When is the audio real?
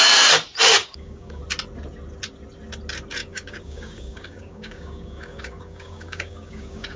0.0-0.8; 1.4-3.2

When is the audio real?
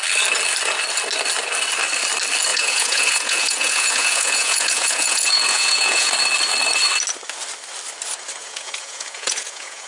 0.0-2.5; 6.1-8.4